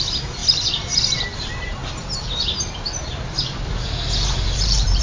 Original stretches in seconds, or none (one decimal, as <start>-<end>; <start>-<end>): 0.4-1.0; 1.8-4.2